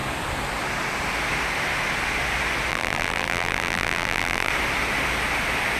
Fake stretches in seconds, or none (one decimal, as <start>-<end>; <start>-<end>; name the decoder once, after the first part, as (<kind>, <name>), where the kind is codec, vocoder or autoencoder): 2.7-4.5 (vocoder, BigVGAN v2)